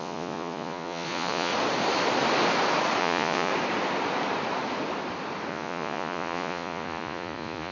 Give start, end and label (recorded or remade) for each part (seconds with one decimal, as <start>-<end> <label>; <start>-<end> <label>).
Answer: 0.0-1.5 remade; 1.5-3.0 recorded; 3.0-3.5 remade; 3.5-5.5 recorded; 5.5-7.7 remade